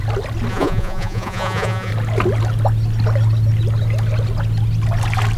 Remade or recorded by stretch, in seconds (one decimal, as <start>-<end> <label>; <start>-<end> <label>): 0.0-0.5 recorded; 0.5-1.9 remade; 1.9-5.4 recorded